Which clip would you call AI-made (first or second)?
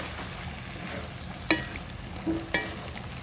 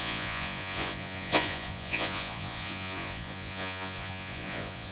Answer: second